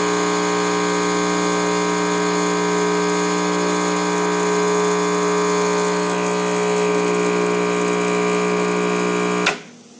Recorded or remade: recorded